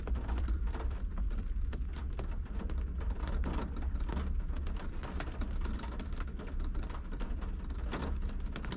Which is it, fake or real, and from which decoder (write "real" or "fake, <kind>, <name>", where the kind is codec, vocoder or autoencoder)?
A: real